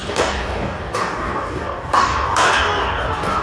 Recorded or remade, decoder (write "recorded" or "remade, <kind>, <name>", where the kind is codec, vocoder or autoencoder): remade, codec, DAC